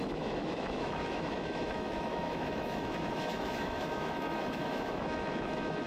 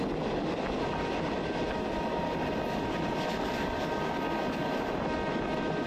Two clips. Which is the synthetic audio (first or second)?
first